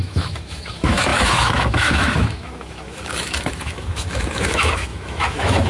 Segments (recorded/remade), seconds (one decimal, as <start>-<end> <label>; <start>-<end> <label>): 0.0-5.7 remade